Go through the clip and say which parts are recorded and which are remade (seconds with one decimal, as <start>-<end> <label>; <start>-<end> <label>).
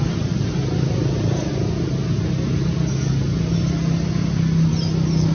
0.0-5.3 recorded